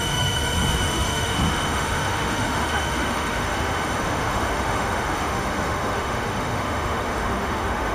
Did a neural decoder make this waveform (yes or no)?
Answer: yes